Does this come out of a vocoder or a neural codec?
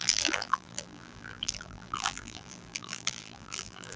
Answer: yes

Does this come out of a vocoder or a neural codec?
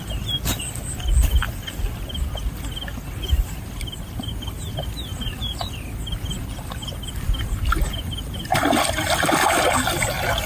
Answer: no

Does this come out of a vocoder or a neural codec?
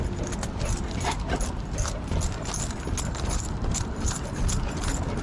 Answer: no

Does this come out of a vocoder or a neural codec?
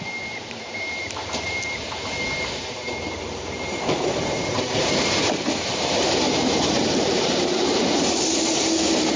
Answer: yes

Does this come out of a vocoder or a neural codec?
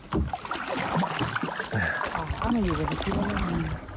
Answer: no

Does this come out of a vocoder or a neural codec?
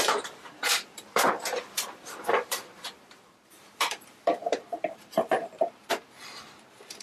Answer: yes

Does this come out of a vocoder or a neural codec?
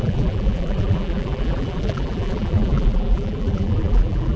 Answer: yes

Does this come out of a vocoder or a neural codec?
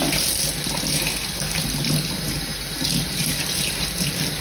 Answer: no